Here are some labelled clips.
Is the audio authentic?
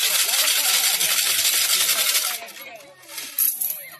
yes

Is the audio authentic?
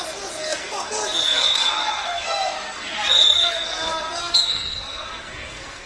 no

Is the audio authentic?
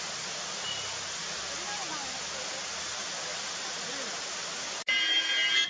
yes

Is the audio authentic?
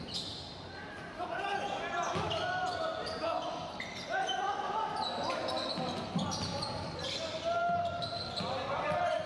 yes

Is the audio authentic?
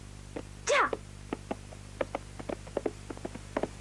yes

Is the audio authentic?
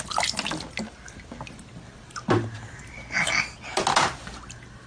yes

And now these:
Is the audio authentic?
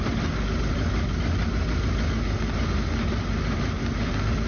yes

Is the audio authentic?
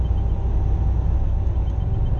yes